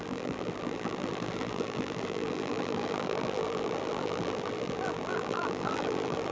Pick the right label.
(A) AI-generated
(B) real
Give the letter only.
A